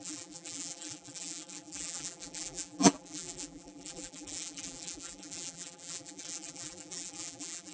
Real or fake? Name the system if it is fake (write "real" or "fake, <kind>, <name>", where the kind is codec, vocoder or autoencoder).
fake, vocoder, BigVGAN v2